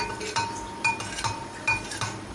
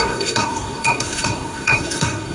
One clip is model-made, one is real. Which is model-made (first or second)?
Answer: second